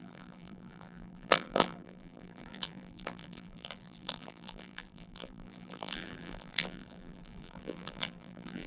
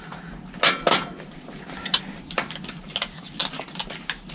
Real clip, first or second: second